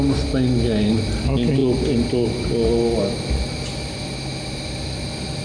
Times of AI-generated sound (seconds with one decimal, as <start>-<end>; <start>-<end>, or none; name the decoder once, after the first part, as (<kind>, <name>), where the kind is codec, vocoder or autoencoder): none